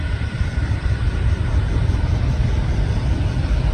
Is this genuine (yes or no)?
yes